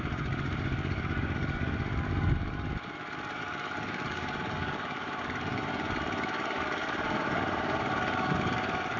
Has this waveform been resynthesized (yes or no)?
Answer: yes